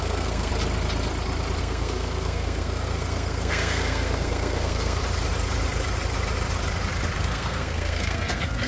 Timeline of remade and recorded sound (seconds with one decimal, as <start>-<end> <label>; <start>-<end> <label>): 0.0-0.5 remade; 0.5-1.6 recorded; 1.6-5.0 remade; 5.0-7.2 recorded; 7.2-8.7 remade